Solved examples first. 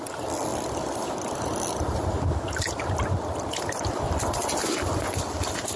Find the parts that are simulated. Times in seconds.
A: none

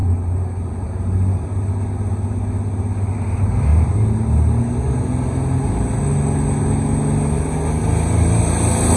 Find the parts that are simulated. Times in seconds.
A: none

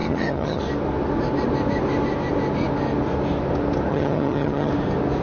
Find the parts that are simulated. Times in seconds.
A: 0.0-0.6 (vocoder, HiFi-GAN); 3.9-4.7